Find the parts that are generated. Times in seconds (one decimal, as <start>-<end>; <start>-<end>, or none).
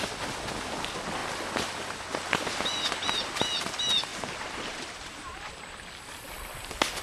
4.1-5.5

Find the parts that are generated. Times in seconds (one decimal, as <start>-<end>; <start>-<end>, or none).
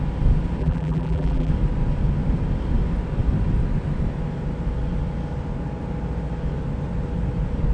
0.6-1.5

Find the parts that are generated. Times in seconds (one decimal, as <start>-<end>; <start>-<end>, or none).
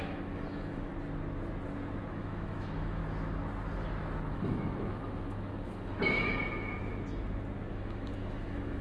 0.0-0.9; 2.1-3.0; 4.3-6.3; 7.7-8.8